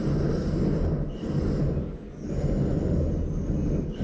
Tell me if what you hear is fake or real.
real